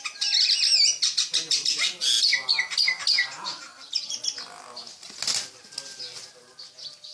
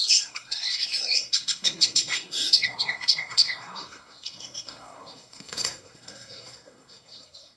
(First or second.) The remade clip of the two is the second